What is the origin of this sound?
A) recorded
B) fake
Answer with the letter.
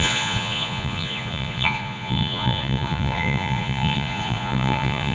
B